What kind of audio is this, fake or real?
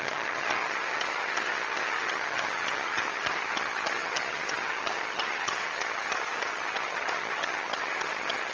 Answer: fake